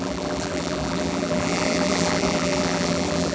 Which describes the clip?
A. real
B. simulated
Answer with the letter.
B